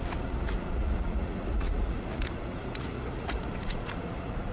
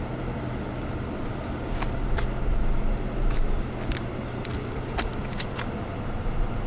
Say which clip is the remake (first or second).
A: first